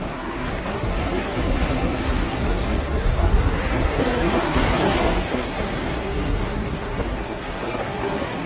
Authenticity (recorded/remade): remade